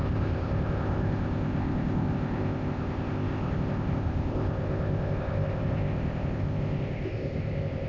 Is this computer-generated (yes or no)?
yes